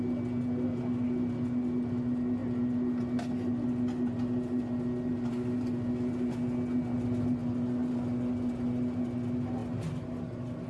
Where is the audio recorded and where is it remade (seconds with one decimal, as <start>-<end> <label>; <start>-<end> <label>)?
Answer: 0.0-10.7 recorded